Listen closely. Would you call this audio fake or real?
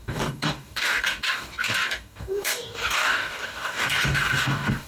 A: fake